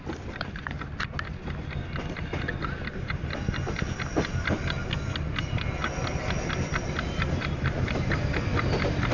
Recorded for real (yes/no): yes